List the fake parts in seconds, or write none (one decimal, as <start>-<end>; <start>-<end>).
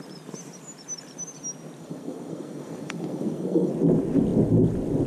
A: 1.8-3.7